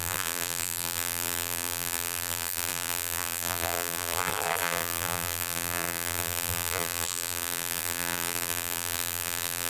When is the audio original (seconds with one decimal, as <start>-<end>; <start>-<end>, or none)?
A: none